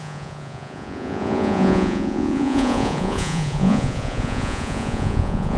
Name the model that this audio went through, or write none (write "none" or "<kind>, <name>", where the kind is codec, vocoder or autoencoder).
vocoder, Vocos